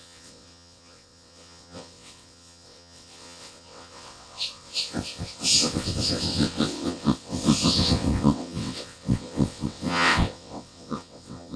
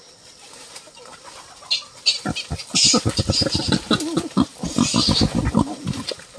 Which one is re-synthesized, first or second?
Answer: first